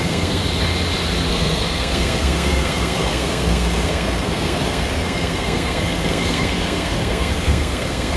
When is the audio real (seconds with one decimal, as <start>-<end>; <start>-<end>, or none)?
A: 0.4-1.3